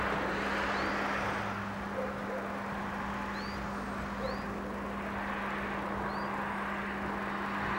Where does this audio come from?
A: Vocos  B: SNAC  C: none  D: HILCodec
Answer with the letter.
C